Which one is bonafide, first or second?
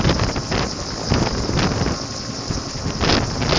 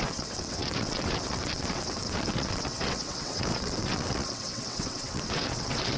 first